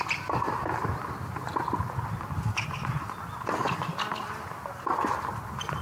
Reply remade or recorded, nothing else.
recorded